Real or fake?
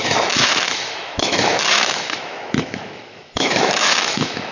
fake